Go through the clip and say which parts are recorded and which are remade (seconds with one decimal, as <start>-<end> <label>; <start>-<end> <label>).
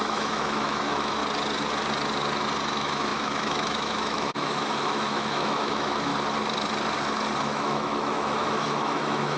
0.0-1.2 remade; 1.2-2.7 recorded; 2.7-6.1 remade; 6.1-7.4 recorded; 7.4-9.4 remade